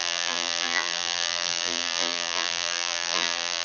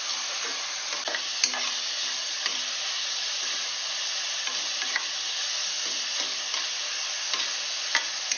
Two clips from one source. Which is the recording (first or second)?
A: second